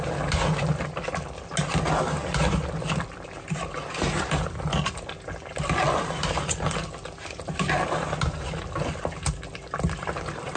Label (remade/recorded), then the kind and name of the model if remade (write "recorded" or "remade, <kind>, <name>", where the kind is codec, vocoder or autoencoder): recorded